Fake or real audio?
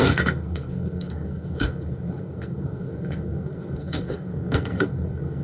fake